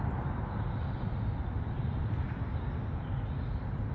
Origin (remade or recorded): recorded